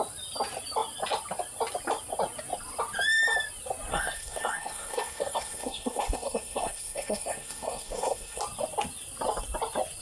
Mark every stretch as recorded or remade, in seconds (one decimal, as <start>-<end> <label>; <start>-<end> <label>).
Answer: 0.0-3.9 recorded; 3.9-8.4 remade; 8.4-10.0 recorded

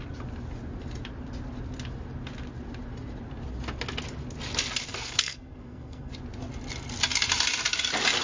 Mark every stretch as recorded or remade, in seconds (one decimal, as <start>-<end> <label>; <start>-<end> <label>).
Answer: 0.0-4.9 recorded; 4.9-6.1 remade; 6.1-8.2 recorded

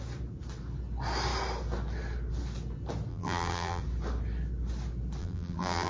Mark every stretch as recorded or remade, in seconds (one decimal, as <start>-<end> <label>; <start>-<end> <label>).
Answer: 0.0-3.1 recorded; 3.1-3.8 remade; 3.8-5.2 recorded; 5.2-5.9 remade

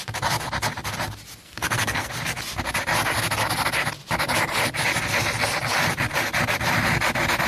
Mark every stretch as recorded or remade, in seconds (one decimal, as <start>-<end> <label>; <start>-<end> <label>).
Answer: 0.0-1.4 recorded; 1.4-2.1 remade; 2.1-7.5 recorded